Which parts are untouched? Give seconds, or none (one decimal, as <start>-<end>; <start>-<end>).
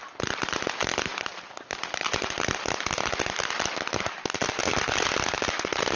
0.0-6.0